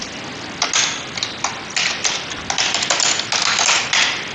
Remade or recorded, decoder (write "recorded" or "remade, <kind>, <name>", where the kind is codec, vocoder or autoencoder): recorded